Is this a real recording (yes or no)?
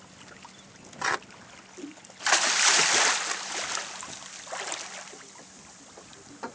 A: yes